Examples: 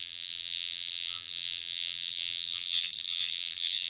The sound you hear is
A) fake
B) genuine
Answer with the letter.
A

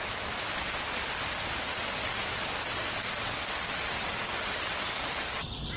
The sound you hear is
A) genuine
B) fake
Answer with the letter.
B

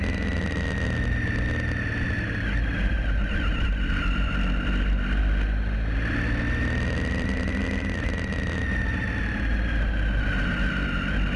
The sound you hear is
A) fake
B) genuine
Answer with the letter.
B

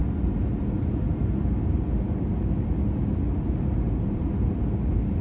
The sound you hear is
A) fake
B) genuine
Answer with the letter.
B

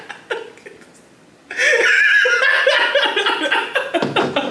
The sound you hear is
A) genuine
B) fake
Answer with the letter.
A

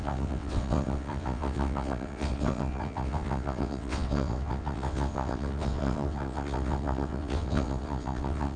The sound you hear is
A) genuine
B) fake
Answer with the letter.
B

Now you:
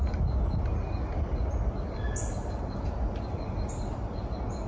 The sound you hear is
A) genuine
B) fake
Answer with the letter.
A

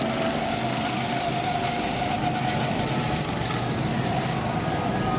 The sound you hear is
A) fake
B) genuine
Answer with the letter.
B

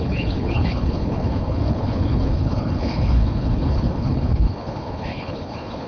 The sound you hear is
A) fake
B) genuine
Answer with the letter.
A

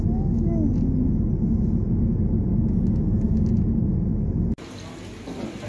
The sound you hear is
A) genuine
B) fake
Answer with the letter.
A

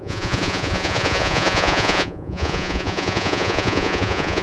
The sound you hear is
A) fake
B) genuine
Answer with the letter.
A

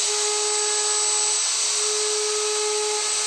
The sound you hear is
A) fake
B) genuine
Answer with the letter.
B